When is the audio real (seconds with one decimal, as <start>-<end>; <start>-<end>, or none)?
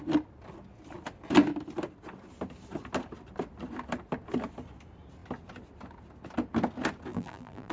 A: 0.0-7.1